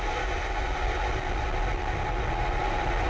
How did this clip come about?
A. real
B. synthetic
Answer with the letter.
A